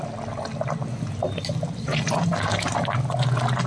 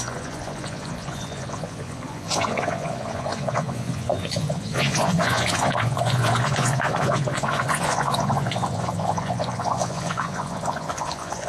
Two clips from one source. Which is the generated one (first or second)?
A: second